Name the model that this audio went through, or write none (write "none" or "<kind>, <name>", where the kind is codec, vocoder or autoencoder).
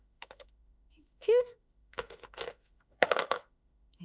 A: autoencoder, DAC-VAE